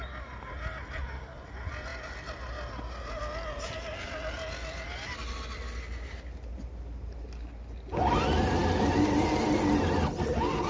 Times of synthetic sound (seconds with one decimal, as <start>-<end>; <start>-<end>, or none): none